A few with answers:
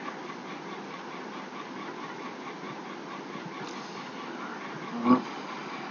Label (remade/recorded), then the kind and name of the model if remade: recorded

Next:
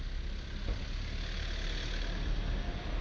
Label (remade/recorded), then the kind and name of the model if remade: recorded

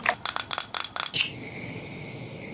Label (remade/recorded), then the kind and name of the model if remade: recorded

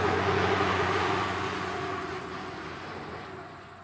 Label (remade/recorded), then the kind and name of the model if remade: remade, vocoder, Vocos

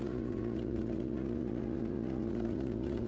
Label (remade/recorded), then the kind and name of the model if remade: remade, vocoder, Vocos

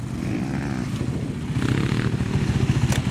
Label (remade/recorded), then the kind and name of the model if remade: recorded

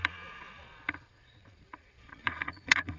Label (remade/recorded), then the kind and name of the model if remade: remade, vocoder, Vocos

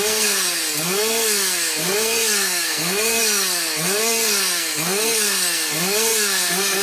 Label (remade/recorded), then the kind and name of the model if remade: remade, codec, SNAC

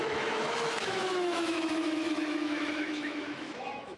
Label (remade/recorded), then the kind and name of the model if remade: remade, autoencoder, DAC-VAE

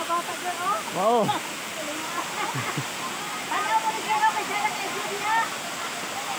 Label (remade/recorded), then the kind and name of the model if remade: recorded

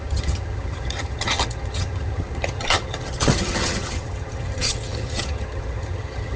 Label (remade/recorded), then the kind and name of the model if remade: remade, vocoder, HiFi-GAN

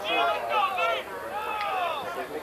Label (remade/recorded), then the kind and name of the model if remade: recorded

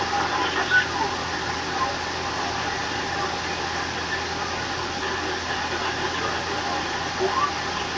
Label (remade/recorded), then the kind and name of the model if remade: recorded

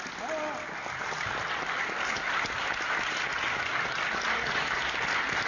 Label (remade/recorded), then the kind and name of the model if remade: recorded